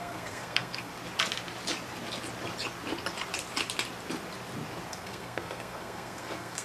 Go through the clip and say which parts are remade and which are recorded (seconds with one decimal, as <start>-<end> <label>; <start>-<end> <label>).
0.0-0.9 remade; 0.9-4.9 recorded; 4.9-6.6 remade